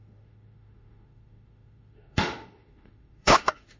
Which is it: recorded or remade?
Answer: remade